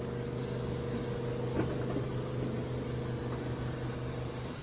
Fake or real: real